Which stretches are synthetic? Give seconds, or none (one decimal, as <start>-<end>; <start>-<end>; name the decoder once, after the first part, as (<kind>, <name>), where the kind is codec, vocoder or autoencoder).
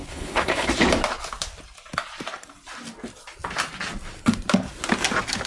0.0-0.7 (codec, HILCodec)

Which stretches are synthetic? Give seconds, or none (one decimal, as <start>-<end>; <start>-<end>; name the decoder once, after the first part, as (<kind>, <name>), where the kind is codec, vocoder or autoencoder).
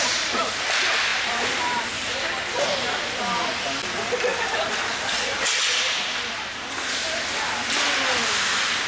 1.1-3.2 (vocoder, BigVGAN v2); 4.3-5.1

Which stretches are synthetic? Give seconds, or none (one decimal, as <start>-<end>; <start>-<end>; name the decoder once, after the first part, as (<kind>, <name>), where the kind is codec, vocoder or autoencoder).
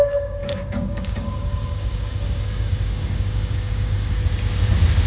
0.0-4.2 (codec, DAC)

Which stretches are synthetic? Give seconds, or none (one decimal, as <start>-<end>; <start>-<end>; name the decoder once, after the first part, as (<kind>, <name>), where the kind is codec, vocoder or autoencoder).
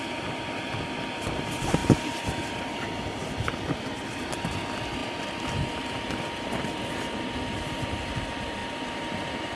none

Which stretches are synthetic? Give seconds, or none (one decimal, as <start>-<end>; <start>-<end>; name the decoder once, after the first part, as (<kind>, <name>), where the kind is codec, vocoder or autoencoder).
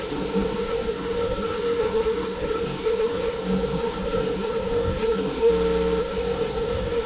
0.0-5.5 (codec, SNAC); 6.0-7.1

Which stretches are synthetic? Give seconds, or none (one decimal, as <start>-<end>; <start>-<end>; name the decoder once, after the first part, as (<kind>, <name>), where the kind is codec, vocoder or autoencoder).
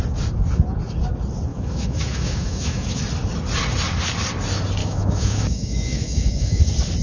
1.5-3.0 (autoencoder, DAC-VAE); 4.8-6.6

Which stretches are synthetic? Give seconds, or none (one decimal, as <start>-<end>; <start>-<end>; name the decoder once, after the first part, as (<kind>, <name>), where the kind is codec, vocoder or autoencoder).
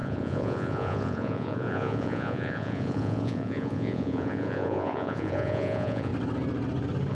0.0-6.1 (vocoder, Vocos)